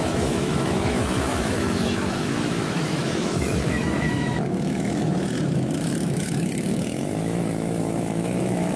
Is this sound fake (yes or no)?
yes